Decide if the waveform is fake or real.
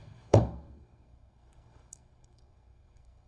fake